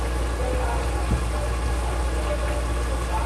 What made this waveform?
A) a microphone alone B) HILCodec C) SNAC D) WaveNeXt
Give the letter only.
A